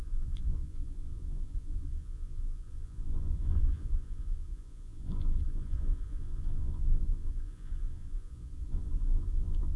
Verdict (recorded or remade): remade